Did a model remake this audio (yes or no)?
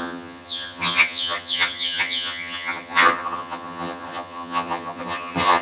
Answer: yes